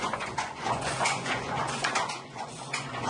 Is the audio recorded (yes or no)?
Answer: no